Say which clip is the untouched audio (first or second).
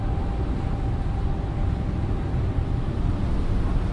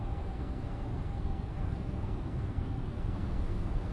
first